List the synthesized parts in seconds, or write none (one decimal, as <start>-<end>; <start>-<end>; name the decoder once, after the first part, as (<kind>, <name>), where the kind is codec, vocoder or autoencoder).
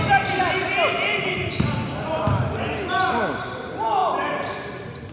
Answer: none